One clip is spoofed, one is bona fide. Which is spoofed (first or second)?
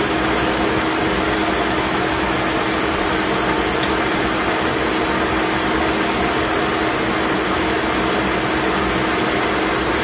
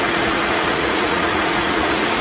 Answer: second